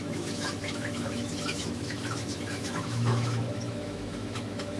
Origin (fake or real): fake